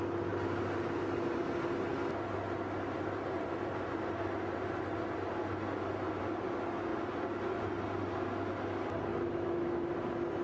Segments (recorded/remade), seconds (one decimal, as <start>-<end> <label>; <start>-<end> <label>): 0.0-9.1 recorded; 9.1-9.7 remade; 9.7-10.4 recorded